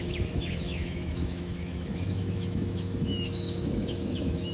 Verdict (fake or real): fake